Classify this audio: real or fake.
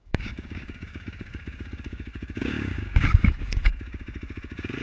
fake